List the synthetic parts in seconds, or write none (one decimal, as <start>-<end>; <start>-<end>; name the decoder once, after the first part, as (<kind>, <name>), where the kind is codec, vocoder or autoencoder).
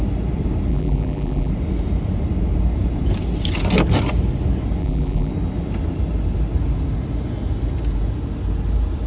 0.7-1.5 (vocoder, BigVGAN v2); 4.8-5.3